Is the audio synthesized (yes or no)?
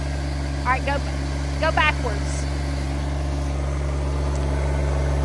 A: no